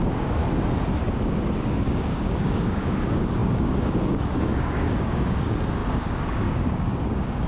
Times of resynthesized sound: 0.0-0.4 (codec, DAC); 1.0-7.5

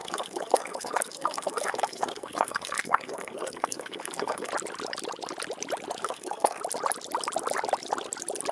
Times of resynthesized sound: 0.0-4.5 (codec, SNAC); 6.0-6.6

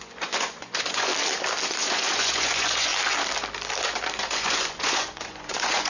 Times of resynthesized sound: 0.0-1.1 (vocoder, Vocos); 1.7-2.9; 4.2-5.9

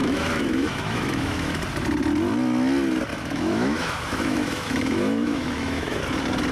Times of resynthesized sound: 0.0-1.6 (autoencoder, DAC-VAE); 3.1-6.0

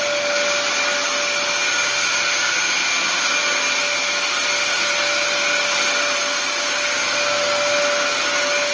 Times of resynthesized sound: none

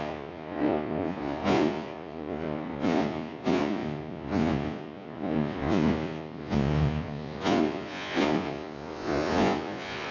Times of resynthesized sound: 0.0-10.1 (vocoder, Vocos)

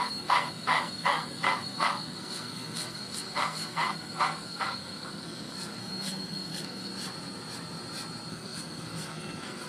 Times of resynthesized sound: 0.0-6.9 (codec, SNAC); 8.3-9.7

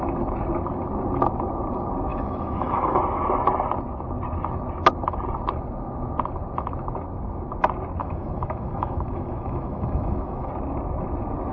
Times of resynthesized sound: 2.1-3.0 (autoencoder, DAC-VAE); 8.0-10.5